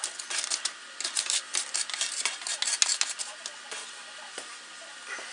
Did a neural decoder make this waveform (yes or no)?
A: no